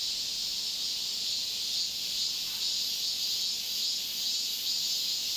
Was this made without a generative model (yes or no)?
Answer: yes